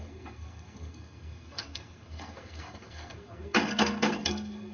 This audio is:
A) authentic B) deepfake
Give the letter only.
B